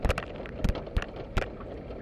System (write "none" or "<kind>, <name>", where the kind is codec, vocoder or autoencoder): none